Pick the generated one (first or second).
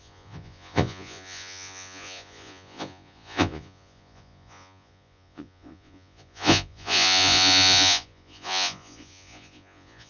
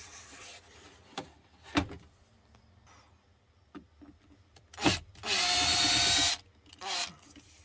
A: first